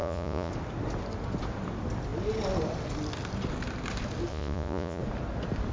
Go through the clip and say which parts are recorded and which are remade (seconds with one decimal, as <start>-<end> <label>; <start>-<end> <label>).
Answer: 0.0-0.5 remade; 0.5-4.3 recorded; 4.3-5.0 remade; 5.0-5.7 recorded